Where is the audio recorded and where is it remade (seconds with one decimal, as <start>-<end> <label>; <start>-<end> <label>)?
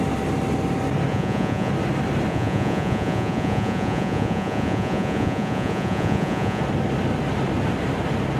0.0-1.1 recorded; 1.1-1.7 remade; 1.7-2.3 recorded; 2.3-6.6 remade; 6.6-8.4 recorded